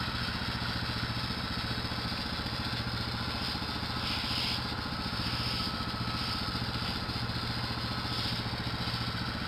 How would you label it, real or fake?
real